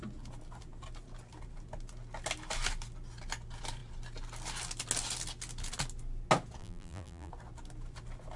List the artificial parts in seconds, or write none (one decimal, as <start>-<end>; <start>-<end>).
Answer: 6.6-7.3